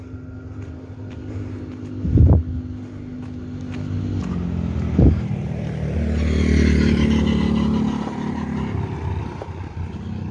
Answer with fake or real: real